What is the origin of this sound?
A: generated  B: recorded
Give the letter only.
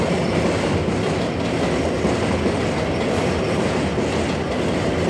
B